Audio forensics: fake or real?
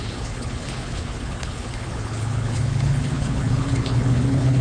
fake